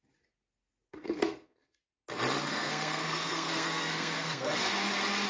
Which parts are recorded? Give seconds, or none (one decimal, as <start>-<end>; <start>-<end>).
0.0-0.9; 1.8-2.5; 4.6-5.3